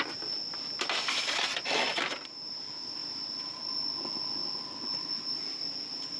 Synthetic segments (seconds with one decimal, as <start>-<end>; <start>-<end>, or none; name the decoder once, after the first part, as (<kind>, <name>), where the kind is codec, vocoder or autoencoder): none